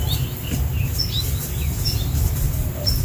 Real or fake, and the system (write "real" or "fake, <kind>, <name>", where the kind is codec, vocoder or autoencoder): real